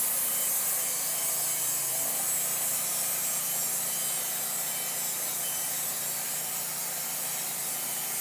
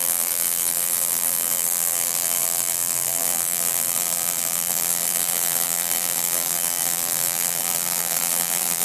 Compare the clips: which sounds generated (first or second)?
second